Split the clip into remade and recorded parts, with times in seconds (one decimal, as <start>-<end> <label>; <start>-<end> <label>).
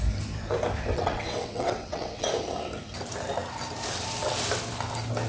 0.0-0.9 recorded; 0.9-2.3 remade; 2.3-5.3 recorded